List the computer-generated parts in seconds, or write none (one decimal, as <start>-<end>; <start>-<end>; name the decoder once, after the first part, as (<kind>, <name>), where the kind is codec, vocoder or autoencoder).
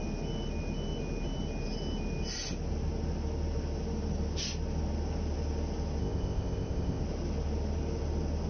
6.0-7.0 (codec, ZipCodec)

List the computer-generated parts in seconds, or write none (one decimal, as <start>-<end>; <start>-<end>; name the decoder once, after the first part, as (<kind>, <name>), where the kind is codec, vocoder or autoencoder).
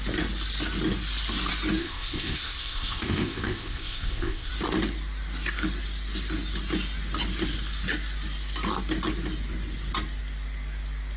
1.8-4.5 (codec, ZipCodec)